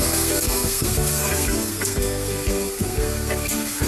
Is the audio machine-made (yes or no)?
yes